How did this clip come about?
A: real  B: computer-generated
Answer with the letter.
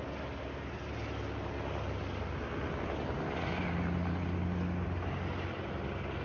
A